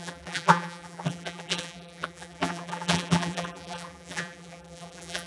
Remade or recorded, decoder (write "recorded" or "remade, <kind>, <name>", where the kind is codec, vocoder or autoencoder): remade, vocoder, BigVGAN v2